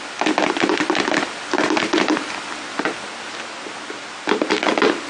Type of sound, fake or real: real